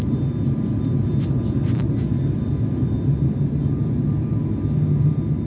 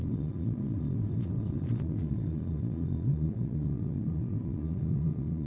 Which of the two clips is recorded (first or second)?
first